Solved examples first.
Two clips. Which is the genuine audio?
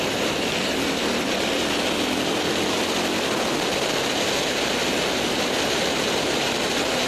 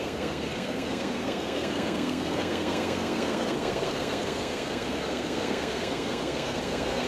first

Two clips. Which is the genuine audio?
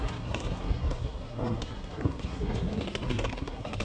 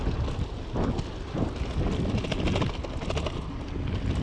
second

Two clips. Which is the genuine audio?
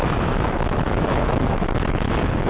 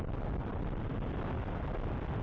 second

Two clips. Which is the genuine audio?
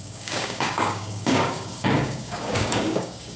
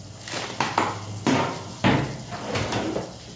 second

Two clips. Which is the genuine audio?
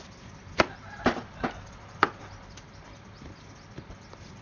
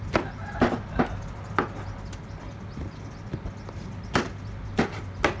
second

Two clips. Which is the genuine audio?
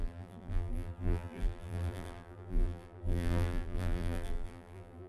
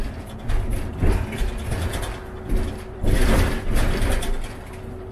second